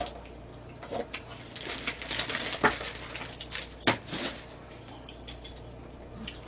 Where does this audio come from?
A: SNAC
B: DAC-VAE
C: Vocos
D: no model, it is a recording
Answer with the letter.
D